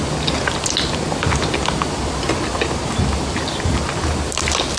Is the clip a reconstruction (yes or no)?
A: no